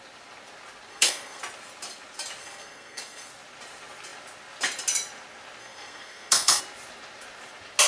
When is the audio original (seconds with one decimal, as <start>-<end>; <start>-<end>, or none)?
0.0-0.9; 1.4-2.4; 3.3-5.6; 6.6-7.9